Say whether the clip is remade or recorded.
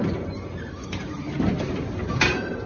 recorded